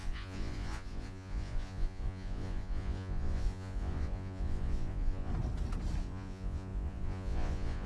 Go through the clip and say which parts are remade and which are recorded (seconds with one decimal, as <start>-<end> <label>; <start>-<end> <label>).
0.0-5.3 remade; 5.3-6.0 recorded; 6.0-7.9 remade